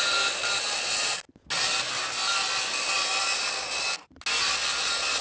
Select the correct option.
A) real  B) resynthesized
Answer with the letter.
A